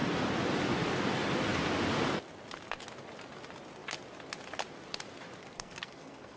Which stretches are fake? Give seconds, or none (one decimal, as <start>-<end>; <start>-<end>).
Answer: 5.4-6.4